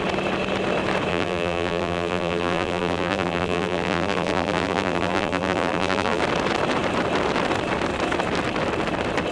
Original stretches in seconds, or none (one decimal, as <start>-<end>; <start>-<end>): 0.0-1.1; 6.2-9.3